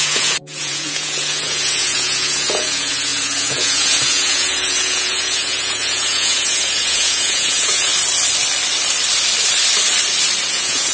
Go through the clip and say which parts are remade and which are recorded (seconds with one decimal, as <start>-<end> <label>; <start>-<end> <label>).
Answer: 0.0-7.9 remade; 7.9-10.5 recorded; 10.5-10.9 remade

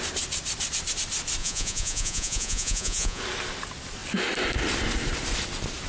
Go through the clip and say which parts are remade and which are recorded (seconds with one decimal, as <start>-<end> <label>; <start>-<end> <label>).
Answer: 0.0-1.4 recorded; 1.4-3.2 remade; 3.2-5.9 recorded

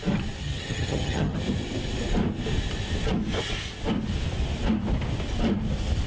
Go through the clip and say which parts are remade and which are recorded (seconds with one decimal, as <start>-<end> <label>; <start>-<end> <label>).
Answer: 0.0-0.4 recorded; 0.4-1.4 remade; 1.4-6.1 recorded